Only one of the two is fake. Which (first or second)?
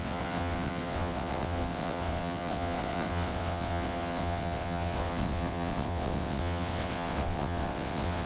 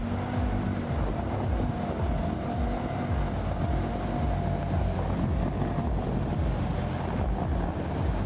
first